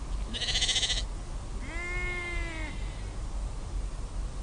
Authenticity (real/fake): real